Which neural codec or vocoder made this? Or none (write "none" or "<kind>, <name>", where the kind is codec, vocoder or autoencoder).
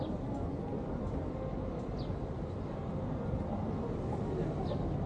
none